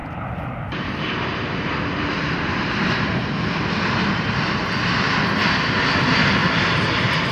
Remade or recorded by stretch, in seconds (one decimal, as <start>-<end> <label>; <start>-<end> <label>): 0.0-3.9 remade; 3.9-6.4 recorded; 6.4-7.3 remade